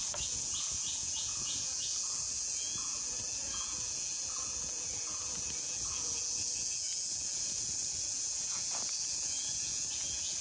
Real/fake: fake